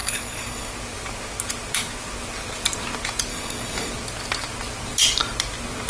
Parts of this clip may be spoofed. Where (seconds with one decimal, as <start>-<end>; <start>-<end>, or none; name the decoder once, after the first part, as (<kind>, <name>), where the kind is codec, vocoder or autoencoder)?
0.0-0.7 (codec, DAC); 3.3-3.9

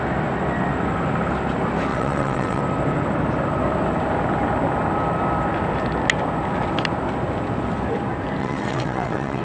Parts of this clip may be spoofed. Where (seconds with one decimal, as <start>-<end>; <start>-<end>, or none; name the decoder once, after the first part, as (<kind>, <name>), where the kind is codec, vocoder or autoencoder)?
1.9-2.6 (vocoder, WaveNeXt); 8.4-9.4